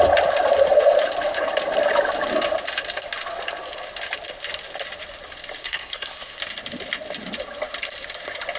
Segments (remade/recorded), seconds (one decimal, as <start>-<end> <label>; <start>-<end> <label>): 0.0-5.6 recorded; 5.6-6.4 remade; 6.4-8.6 recorded